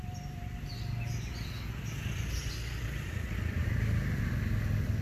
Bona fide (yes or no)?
yes